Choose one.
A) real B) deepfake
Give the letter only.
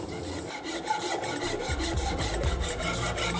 A